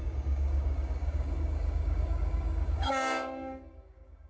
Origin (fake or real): fake